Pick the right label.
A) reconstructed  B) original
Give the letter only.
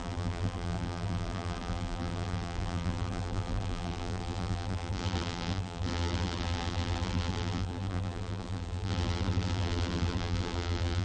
A